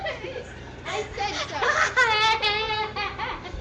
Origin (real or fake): real